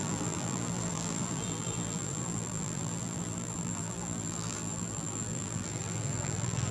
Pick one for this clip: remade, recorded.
remade